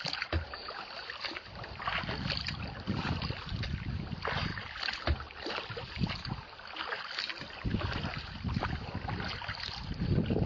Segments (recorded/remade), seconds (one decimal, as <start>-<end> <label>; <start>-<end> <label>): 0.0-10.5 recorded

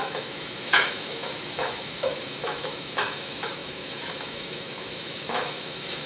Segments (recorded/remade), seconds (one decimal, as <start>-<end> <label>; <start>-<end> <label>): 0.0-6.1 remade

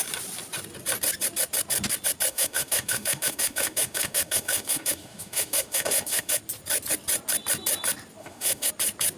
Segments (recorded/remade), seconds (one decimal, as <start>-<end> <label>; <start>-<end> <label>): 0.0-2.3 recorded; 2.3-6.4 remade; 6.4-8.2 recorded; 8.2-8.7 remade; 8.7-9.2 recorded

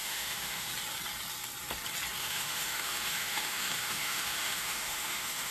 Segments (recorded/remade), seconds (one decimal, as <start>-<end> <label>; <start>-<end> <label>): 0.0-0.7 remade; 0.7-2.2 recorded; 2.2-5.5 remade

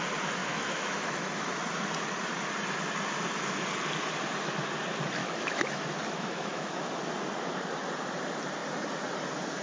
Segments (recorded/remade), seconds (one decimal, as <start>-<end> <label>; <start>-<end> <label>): 0.0-0.4 recorded; 0.4-1.6 remade; 1.6-5.2 recorded; 5.2-6.9 remade; 6.9-9.6 recorded

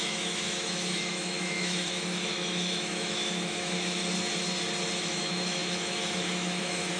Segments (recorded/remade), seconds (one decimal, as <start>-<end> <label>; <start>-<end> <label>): 0.0-4.0 remade; 4.0-5.0 recorded; 5.0-7.0 remade

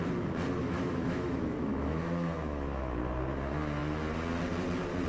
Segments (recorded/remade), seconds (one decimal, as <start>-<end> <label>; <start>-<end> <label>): 0.0-0.6 recorded; 0.6-3.0 remade; 3.0-5.1 recorded

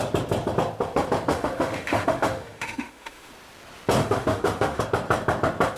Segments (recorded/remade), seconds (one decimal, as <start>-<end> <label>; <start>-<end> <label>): 0.0-1.3 recorded; 1.3-3.3 remade; 3.3-4.0 recorded; 4.0-4.8 remade; 4.8-5.8 recorded